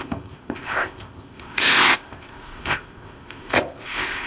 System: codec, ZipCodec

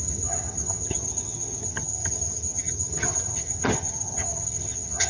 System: vocoder, HiFi-GAN